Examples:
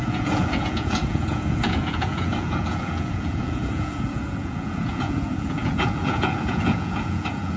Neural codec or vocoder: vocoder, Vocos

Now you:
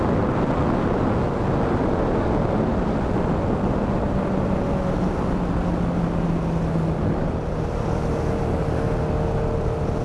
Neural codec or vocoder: none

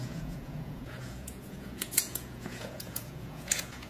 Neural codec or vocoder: vocoder, Vocos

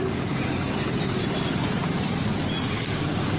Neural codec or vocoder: none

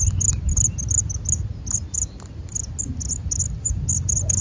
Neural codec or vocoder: none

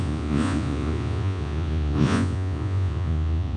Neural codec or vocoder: vocoder, Vocos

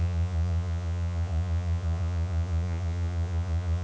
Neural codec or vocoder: vocoder, Vocos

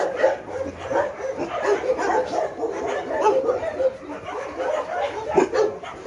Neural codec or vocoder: none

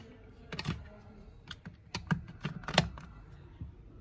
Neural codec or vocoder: none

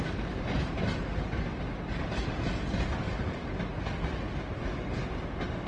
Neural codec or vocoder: none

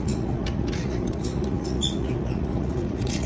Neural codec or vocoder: vocoder, Vocos